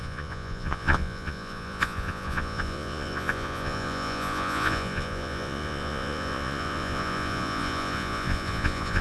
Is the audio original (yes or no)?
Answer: no